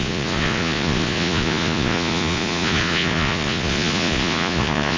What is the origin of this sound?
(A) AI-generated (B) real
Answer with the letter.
A